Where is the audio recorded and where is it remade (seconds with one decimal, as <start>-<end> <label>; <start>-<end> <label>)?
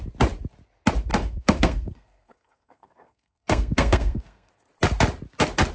0.0-1.1 recorded; 1.1-4.5 remade; 4.5-5.7 recorded